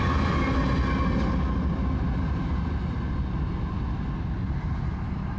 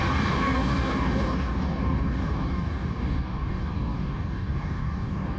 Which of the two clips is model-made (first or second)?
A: second